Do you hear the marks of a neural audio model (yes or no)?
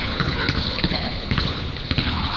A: yes